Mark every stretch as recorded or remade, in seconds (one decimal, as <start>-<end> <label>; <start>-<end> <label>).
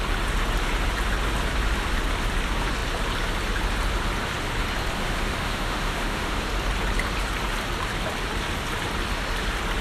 0.0-5.0 recorded; 5.0-6.4 remade; 6.4-9.8 recorded